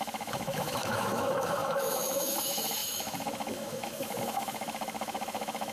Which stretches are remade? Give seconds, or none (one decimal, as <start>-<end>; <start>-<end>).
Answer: 0.0-5.7